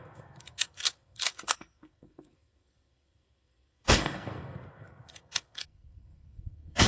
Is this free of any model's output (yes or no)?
no